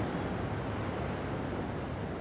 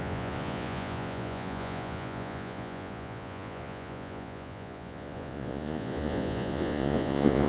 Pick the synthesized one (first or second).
second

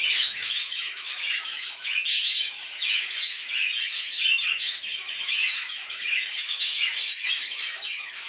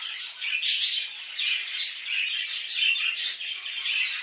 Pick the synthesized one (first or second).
first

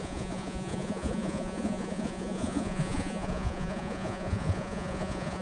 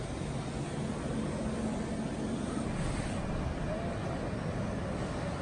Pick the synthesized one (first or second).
first